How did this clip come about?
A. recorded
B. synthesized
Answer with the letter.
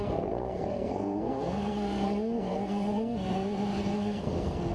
B